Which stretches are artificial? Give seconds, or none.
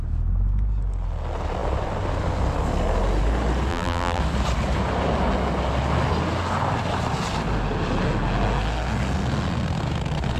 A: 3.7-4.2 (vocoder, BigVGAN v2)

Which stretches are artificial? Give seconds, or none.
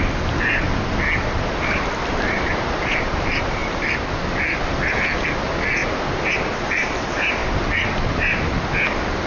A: none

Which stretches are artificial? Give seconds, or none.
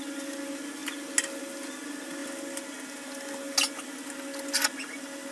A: none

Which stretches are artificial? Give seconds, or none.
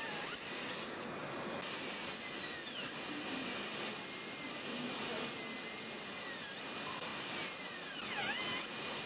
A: 7.1-8.0 (vocoder, BigVGAN v2)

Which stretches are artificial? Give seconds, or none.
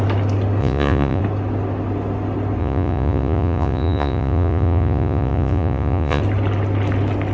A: 0.6-1.2 (vocoder, Vocos); 2.6-6.2